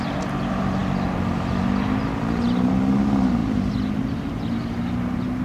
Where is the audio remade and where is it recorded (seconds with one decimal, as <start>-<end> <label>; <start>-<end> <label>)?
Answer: 0.0-3.4 recorded; 3.4-4.3 remade; 4.3-5.4 recorded

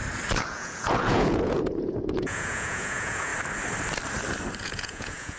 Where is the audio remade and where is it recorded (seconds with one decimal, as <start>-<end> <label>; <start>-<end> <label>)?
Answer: 0.0-0.5 recorded; 0.5-3.3 remade; 3.3-4.6 recorded; 4.6-5.4 remade

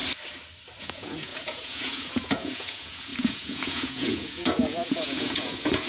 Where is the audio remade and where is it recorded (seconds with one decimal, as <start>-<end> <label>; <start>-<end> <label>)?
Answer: 0.0-0.8 recorded; 0.8-5.9 remade

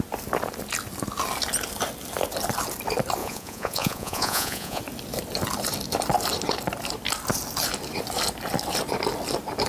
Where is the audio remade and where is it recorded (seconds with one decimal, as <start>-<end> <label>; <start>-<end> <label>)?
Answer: 0.0-3.2 recorded; 3.2-4.8 remade; 4.8-9.7 recorded

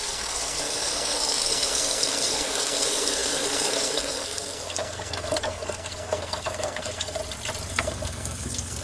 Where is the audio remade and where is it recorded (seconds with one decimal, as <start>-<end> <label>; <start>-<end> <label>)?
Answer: 0.0-7.2 remade; 7.2-7.7 recorded; 7.7-8.8 remade

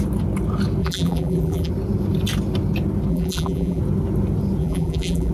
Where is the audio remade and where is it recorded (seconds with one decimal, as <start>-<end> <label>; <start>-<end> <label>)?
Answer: 0.0-0.8 recorded; 0.8-1.7 remade; 1.7-3.1 recorded; 3.1-3.8 remade; 3.8-4.6 recorded; 4.6-5.3 remade

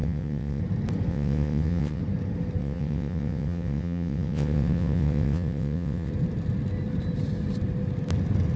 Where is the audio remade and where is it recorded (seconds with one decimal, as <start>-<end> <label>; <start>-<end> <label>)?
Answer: 0.0-0.6 remade; 0.6-1.1 recorded; 1.1-2.0 remade; 2.0-2.6 recorded; 2.6-6.1 remade; 6.1-8.6 recorded